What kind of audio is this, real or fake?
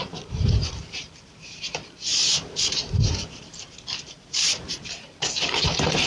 fake